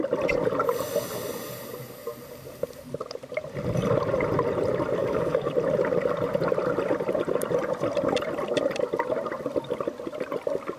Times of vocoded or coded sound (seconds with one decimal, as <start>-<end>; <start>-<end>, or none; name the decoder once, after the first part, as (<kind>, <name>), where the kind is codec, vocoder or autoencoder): 5.0-5.5 (codec, DAC)

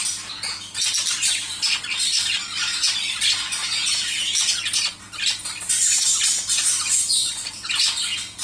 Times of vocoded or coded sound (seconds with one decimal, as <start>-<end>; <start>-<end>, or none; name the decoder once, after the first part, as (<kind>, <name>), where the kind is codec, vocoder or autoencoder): 6.6-7.3 (vocoder, BigVGAN v2)

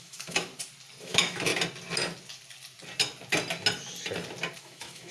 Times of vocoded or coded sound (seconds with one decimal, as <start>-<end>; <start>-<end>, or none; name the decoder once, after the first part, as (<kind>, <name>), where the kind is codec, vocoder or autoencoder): 0.0-0.5 (autoencoder, DAC-VAE); 1.0-1.5; 4.6-5.1

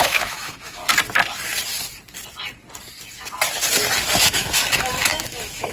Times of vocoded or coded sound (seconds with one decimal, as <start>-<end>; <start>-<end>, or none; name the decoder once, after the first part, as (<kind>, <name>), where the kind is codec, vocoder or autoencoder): 0.0-0.8 (autoencoder, DAC-VAE); 4.2-5.7